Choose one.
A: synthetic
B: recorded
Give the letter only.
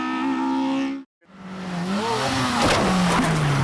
B